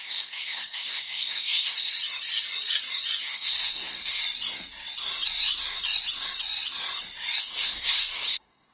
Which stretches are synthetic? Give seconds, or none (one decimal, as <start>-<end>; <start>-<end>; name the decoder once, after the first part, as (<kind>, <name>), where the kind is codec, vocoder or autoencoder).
0.0-1.9 (codec, SNAC); 3.2-4.2; 7.4-8.7